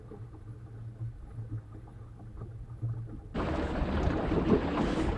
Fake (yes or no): no